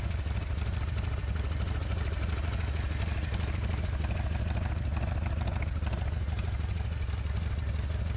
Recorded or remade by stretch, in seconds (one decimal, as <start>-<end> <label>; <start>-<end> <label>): 0.0-8.2 recorded

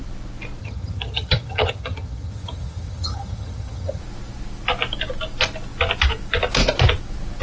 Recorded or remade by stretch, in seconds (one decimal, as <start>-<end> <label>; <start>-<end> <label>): 0.0-0.6 recorded; 0.6-4.0 remade; 4.0-7.4 recorded

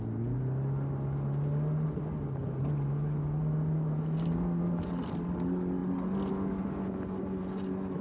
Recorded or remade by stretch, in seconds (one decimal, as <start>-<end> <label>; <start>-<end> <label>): 0.0-8.0 recorded

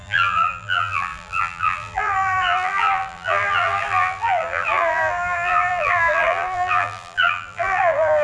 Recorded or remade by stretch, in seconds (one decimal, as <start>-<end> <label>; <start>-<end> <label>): 0.0-8.2 remade

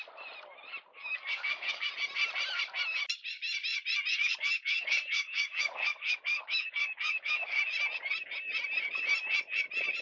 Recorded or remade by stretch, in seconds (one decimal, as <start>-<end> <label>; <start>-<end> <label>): 0.0-0.9 recorded; 0.9-1.9 remade; 1.9-4.1 recorded; 4.1-7.6 remade; 7.6-10.0 recorded

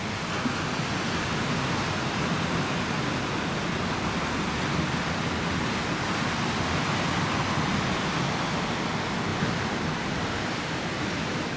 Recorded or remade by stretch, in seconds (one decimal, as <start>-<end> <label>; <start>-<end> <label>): 0.0-11.6 recorded

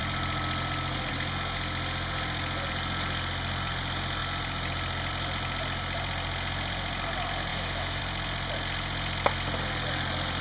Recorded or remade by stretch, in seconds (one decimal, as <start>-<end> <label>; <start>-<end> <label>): 0.0-7.5 recorded; 7.5-8.0 remade; 8.0-10.4 recorded

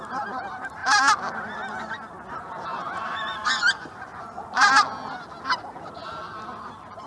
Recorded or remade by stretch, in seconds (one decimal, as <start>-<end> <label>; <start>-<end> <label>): 0.0-2.7 recorded; 2.7-4.7 remade; 4.7-7.1 recorded